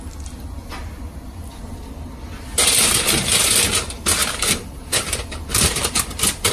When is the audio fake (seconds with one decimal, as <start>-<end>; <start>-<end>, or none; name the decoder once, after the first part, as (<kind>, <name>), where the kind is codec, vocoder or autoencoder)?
4.2-6.5 (vocoder, BigVGAN v2)